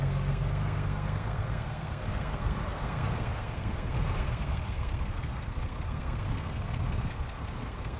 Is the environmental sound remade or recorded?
remade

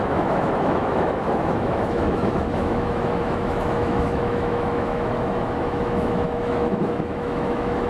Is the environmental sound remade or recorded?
remade